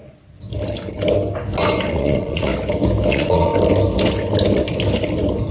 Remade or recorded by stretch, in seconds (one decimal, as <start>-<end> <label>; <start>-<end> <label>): 0.0-1.9 recorded; 1.9-2.5 remade; 2.5-3.1 recorded; 3.1-3.5 remade; 3.5-5.5 recorded